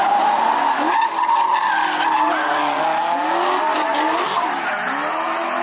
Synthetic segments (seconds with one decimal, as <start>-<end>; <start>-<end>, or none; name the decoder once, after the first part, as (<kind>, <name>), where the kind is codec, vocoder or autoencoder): none